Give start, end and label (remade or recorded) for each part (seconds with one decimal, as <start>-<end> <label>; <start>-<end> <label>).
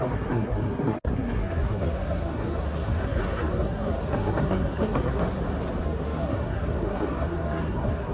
0.0-5.2 remade; 5.2-5.8 recorded; 5.8-8.1 remade